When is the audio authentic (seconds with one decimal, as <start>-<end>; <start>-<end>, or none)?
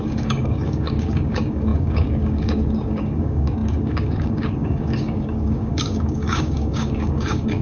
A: none